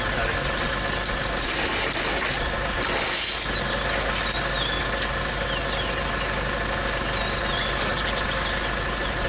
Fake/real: real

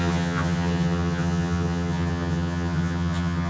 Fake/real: fake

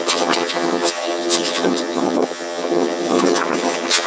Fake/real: fake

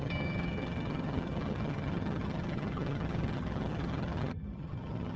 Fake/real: fake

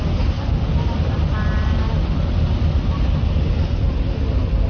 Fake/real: real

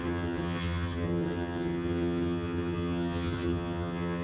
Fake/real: fake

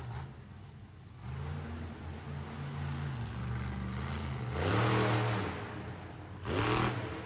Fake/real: real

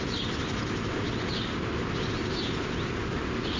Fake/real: real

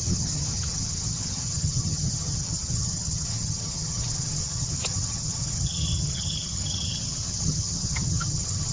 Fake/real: fake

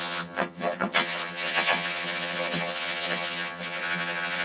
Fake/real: fake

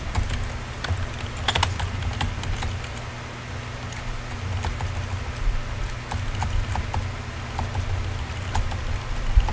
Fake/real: real